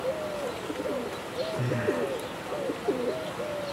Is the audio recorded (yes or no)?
no